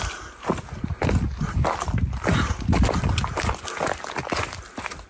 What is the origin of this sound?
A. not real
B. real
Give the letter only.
B